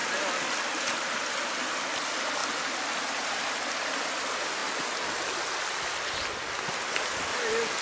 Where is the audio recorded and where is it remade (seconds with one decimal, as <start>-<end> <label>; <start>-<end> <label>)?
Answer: 0.0-7.8 recorded